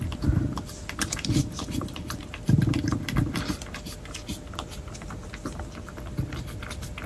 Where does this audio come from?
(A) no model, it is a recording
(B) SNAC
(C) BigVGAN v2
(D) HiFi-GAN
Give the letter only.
C